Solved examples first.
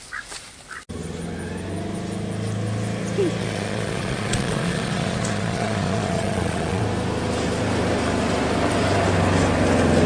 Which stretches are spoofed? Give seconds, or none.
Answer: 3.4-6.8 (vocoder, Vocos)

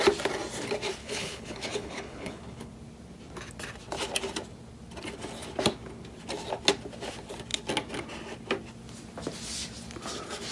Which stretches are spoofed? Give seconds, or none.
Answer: 1.0-2.7 (codec, HILCodec)

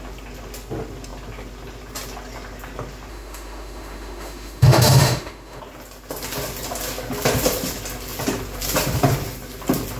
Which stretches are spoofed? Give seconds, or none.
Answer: 3.1-5.6 (autoencoder, DAC-VAE)

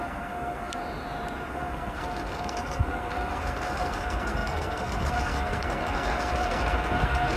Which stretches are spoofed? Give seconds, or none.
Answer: 0.0-0.8 (codec, SNAC); 1.5-7.4

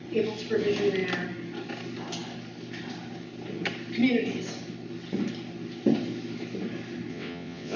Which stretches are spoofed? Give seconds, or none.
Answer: 7.1-7.8 (vocoder, WaveNeXt)

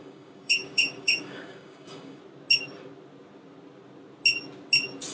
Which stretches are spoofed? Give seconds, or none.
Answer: 0.0-2.2 (codec, DAC)

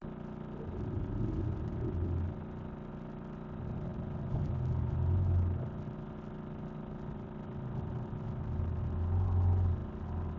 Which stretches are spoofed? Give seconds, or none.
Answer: none

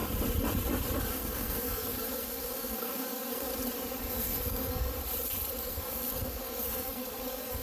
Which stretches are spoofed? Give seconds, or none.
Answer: 1.1-3.5 (codec, SNAC); 4.1-4.9; 5.6-7.6